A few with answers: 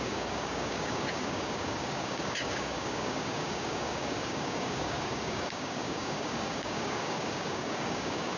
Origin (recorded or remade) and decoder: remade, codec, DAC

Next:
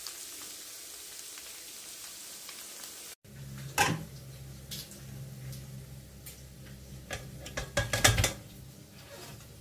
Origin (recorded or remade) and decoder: recorded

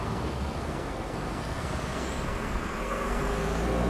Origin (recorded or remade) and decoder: remade, codec, SNAC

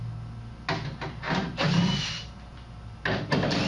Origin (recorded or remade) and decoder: recorded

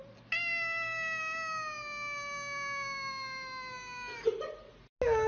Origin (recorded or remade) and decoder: recorded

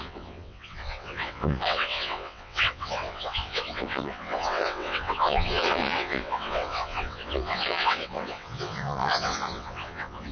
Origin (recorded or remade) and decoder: remade, vocoder, WaveNeXt